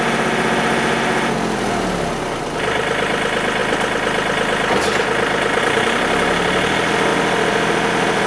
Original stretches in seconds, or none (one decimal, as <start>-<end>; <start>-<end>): 0.0-8.3